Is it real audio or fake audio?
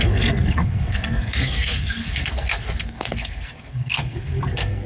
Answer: fake